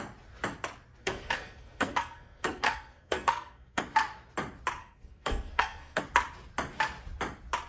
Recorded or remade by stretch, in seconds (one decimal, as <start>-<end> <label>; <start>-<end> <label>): 0.0-1.0 recorded; 1.0-3.8 remade; 3.8-4.8 recorded; 4.8-6.0 remade; 6.0-7.7 recorded